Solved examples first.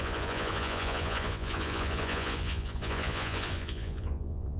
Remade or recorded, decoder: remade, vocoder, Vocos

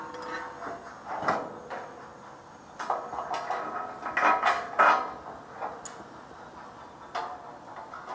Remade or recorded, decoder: recorded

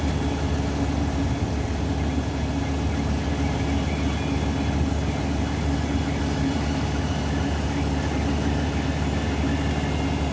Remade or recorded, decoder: recorded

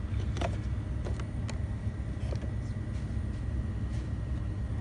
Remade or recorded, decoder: recorded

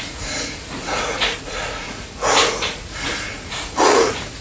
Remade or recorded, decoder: remade, vocoder, Vocos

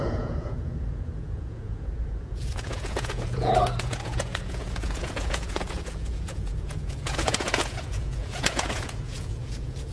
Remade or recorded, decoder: remade, vocoder, Vocos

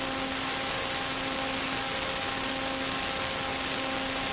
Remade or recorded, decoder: recorded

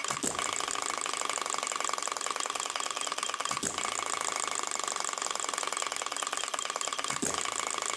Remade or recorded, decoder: recorded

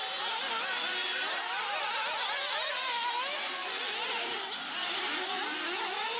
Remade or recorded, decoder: recorded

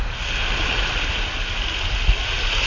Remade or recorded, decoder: recorded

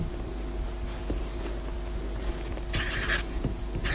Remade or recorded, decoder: recorded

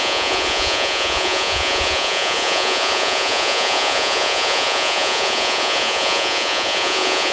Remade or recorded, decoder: remade, vocoder, Vocos